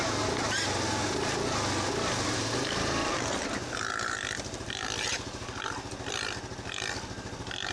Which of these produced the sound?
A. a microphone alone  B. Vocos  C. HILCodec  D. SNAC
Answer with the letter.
A